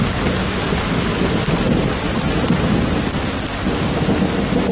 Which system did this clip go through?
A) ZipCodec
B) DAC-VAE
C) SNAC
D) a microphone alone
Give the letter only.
D